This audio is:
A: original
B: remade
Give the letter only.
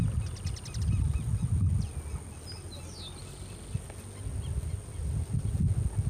A